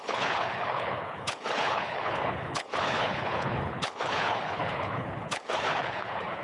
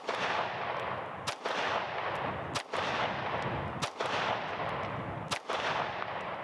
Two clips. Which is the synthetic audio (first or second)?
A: first